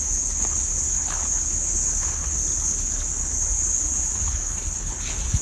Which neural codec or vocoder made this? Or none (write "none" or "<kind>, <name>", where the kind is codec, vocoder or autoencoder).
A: codec, HILCodec